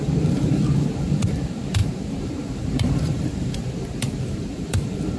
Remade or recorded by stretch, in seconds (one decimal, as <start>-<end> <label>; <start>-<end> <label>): 0.0-5.2 remade